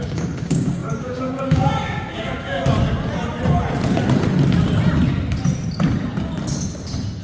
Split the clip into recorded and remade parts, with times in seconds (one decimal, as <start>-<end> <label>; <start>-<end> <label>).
0.0-2.6 remade; 2.6-7.2 recorded